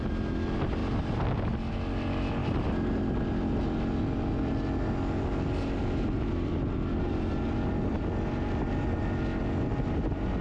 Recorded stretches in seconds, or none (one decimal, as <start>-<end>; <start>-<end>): 0.0-10.4